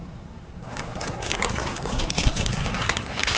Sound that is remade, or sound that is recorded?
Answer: remade